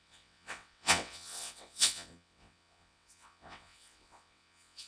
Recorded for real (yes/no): no